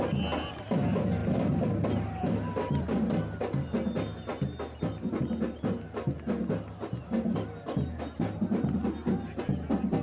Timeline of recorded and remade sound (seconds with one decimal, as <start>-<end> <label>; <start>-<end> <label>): 0.0-10.0 recorded